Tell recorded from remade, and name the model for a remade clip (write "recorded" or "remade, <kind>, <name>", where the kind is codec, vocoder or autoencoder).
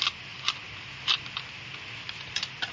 recorded